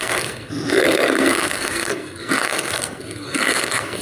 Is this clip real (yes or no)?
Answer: no